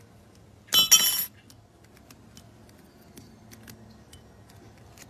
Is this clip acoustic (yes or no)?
yes